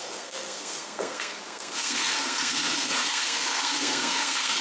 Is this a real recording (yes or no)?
no